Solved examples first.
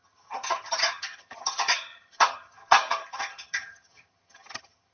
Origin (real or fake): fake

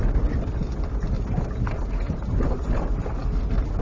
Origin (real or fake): real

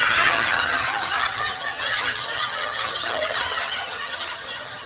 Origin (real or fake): fake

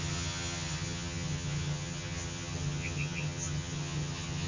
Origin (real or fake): fake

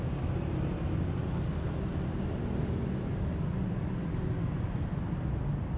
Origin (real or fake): real